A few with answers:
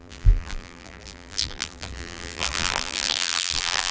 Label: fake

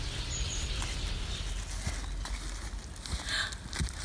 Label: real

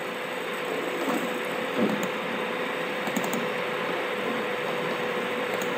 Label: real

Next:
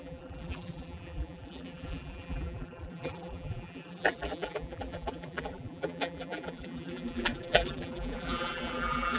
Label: fake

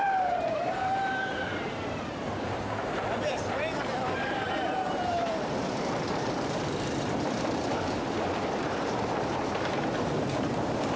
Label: fake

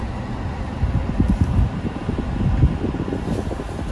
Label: real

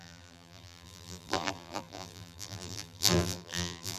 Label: fake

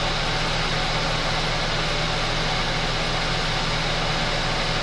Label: real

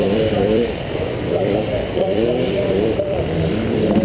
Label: fake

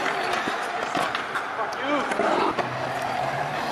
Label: real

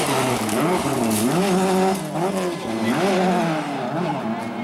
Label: real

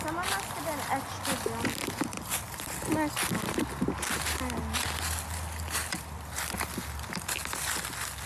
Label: real